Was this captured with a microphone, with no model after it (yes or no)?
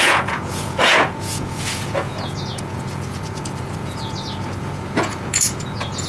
no